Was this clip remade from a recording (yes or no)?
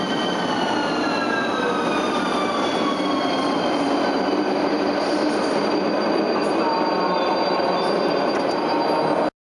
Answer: no